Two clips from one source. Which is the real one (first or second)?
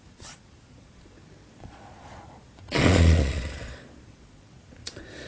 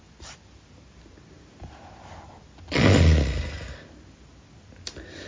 second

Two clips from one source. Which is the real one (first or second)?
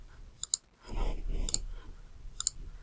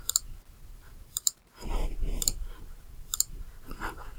first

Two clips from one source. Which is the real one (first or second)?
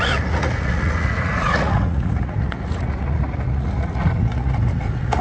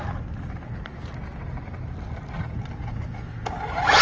second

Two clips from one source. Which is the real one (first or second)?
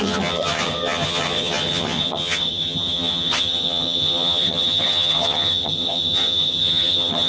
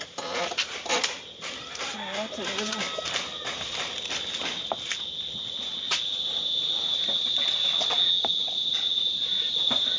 second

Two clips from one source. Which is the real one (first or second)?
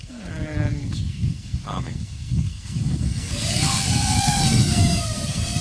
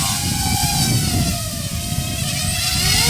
second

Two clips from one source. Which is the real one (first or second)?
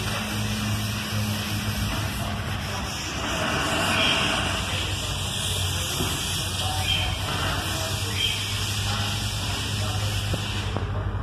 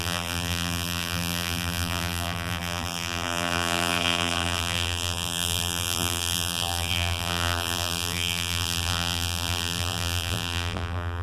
first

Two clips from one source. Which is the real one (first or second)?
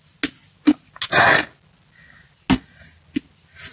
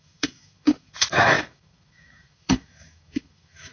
first